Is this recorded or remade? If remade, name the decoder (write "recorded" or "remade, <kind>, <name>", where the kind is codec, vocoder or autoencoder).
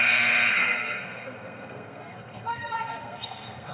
remade, codec, SNAC